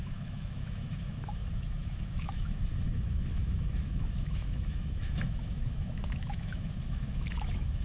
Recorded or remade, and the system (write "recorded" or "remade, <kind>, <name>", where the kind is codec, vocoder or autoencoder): remade, autoencoder, DAC-VAE